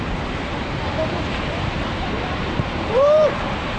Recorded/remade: remade